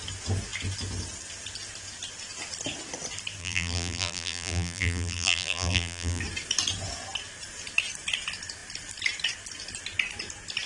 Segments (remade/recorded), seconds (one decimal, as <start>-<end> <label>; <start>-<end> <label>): 0.0-3.4 recorded; 3.4-6.2 remade; 6.2-10.7 recorded